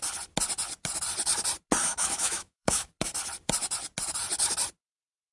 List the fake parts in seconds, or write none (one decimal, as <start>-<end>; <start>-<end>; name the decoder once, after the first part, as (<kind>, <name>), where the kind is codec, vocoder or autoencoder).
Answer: 1.8-2.9 (autoencoder, DAC-VAE)